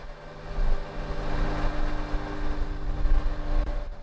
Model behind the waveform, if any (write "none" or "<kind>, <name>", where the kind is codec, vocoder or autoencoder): none